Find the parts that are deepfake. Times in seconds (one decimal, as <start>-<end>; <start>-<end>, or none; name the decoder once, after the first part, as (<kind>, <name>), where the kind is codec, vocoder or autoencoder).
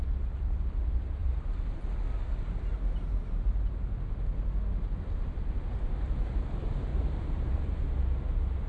1.2-1.8 (vocoder, BigVGAN v2); 6.9-7.8